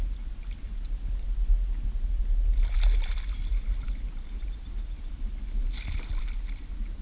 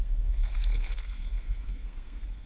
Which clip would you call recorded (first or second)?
first